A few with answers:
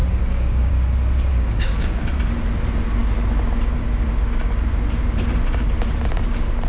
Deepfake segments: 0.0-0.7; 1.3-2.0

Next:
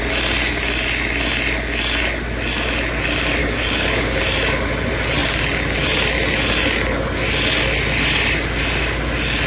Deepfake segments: 3.4-4.2

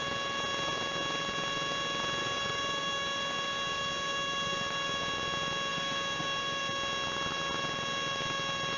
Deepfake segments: 2.2-5.1; 5.7-6.6

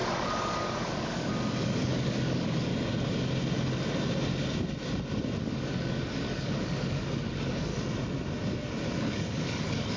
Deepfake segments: 0.0-2.7; 5.4-7.7; 8.9-10.0

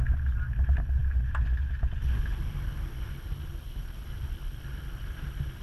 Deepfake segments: none